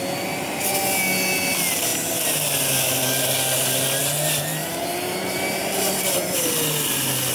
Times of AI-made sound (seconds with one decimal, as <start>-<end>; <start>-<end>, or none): 4.5-6.4